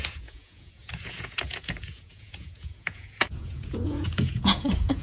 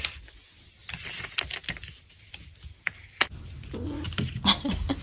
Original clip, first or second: second